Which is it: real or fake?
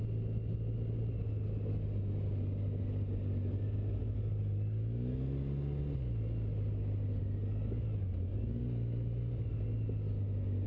real